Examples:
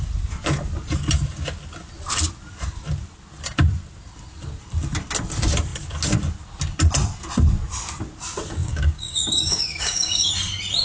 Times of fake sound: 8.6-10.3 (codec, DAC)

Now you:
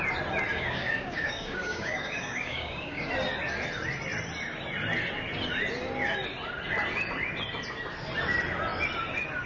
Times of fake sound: 0.5-3.1 (codec, DAC)

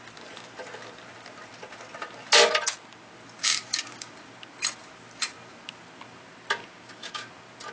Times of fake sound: 3.4-4.1 (codec, DAC); 6.6-7.3

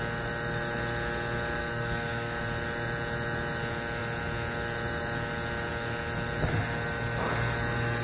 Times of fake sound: 1.6-2.4 (codec, DAC)

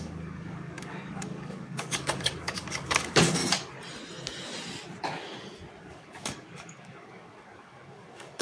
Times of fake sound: 0.0-3.4 (codec, DAC); 5.8-8.4

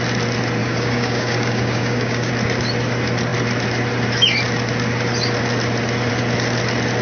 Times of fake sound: 0.6-2.3 (codec, DAC)

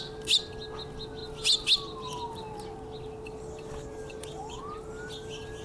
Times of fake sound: none

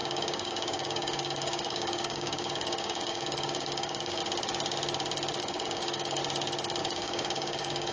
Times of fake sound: 0.0-4.2 (codec, DAC); 5.4-6.2; 6.8-7.9